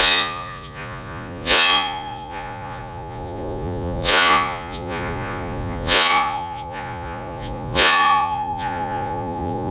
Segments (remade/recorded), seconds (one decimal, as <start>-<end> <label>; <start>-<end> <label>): 0.0-9.7 remade